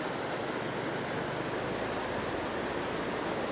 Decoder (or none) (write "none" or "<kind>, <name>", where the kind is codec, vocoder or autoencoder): none